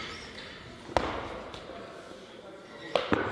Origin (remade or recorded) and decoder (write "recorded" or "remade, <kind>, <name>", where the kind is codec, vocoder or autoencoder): recorded